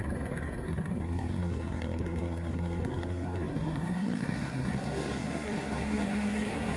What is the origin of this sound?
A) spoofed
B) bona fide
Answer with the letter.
A